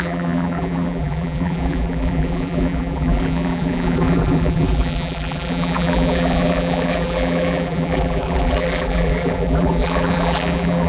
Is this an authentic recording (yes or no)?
no